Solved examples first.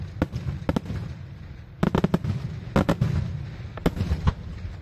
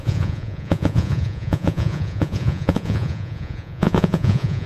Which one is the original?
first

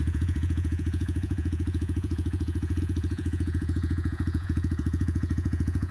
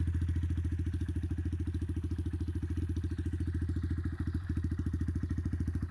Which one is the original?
second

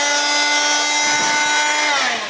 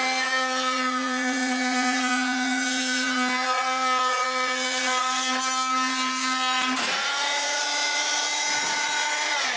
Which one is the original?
first